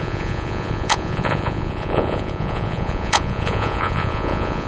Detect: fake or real fake